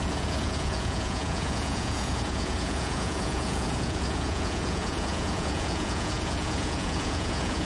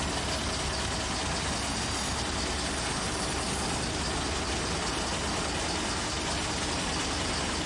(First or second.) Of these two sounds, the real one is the second